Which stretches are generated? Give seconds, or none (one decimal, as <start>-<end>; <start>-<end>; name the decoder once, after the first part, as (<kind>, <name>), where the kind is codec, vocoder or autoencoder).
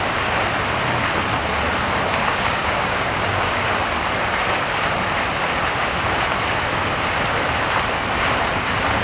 2.3-3.7 (codec, DAC)